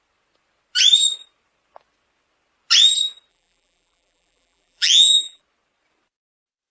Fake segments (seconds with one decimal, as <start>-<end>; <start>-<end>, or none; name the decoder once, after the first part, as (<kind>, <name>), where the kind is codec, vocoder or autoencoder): 3.3-5.4 (vocoder, BigVGAN v2)